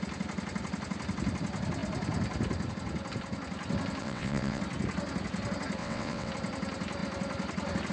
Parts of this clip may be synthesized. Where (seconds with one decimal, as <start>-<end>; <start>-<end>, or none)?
4.0-4.6; 5.8-6.3

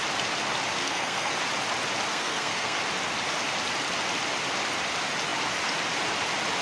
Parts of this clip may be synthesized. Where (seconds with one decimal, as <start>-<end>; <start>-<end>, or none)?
0.8-1.3; 2.1-2.8

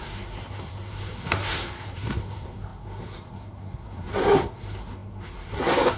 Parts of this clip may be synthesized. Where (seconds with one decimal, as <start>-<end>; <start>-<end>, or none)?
0.0-6.0

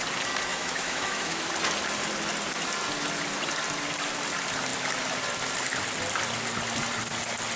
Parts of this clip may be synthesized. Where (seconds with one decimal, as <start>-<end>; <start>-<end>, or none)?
0.5-1.5